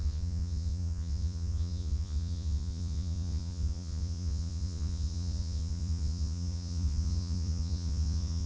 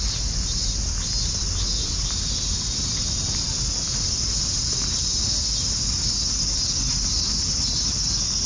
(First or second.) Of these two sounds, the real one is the second